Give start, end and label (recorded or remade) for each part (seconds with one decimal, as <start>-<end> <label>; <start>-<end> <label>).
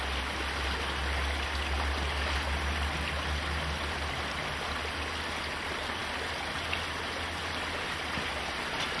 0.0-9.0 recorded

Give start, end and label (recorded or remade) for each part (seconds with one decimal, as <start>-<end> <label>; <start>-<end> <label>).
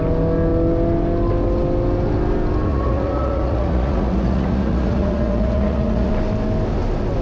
0.0-2.7 recorded; 2.7-6.1 remade; 6.1-7.2 recorded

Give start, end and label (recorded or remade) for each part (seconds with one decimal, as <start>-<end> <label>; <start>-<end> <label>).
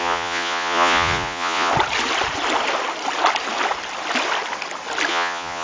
0.0-1.7 remade; 1.7-5.1 recorded; 5.1-5.6 remade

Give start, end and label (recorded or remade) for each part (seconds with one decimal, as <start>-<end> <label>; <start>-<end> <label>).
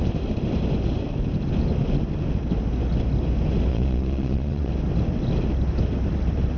0.0-3.7 recorded; 3.7-4.7 remade; 4.7-6.6 recorded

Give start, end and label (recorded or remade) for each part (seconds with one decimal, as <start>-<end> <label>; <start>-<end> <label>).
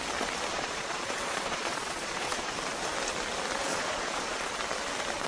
0.0-0.5 recorded; 0.5-2.5 remade; 2.5-3.7 recorded; 3.7-4.5 remade; 4.5-5.3 recorded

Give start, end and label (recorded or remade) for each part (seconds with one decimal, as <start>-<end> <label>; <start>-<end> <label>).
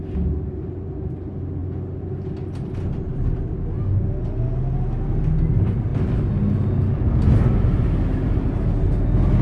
0.0-9.4 recorded